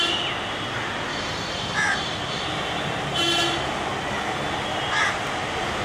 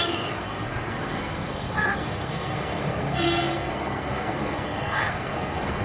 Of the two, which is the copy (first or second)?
second